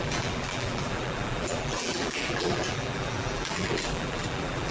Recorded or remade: remade